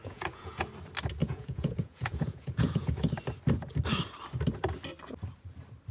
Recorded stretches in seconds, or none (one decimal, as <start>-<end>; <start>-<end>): 0.6-1.2; 3.1-5.9